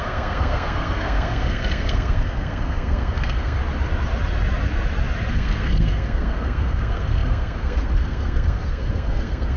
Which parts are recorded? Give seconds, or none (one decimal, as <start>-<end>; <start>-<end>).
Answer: 3.6-5.3